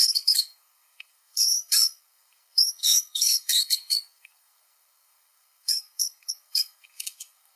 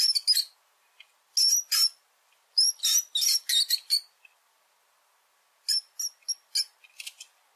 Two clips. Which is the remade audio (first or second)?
first